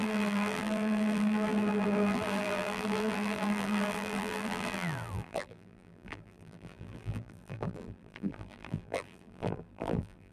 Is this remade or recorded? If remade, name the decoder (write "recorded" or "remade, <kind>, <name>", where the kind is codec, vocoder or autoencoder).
remade, vocoder, BigVGAN v2